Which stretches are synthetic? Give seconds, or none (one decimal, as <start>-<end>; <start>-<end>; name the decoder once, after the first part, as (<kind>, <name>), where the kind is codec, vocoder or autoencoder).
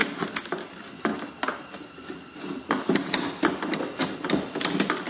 none